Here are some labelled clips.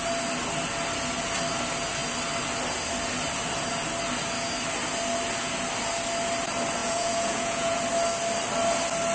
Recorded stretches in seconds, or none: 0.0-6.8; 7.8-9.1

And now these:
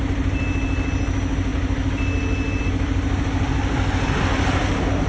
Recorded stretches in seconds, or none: 0.0-5.1

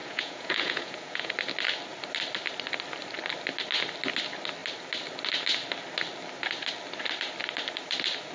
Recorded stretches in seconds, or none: 1.3-8.3

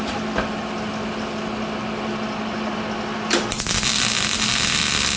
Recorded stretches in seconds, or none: 0.0-5.2

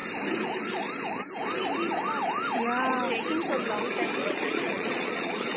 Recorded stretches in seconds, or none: 0.0-4.2